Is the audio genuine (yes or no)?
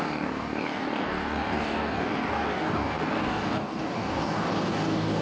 no